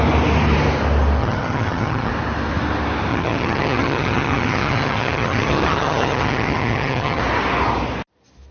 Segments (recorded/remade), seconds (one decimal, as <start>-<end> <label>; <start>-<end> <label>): 0.0-1.2 recorded; 1.2-2.1 remade; 2.1-3.1 recorded; 3.1-7.2 remade; 7.2-8.5 recorded